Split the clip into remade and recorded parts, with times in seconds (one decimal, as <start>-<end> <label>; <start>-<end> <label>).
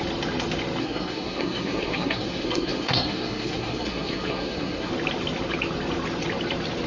0.0-0.8 recorded; 0.8-4.9 remade; 4.9-6.9 recorded